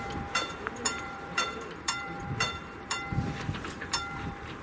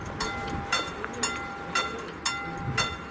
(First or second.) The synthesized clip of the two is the first